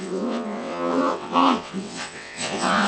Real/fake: fake